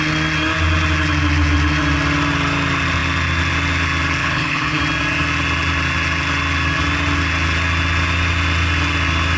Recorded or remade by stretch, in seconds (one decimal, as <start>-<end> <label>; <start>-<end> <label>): 0.0-4.2 recorded; 4.2-4.8 remade; 4.8-9.4 recorded